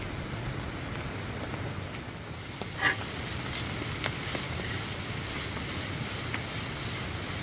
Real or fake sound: real